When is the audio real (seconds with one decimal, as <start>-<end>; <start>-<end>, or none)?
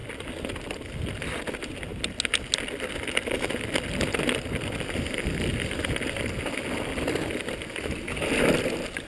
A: 0.0-9.1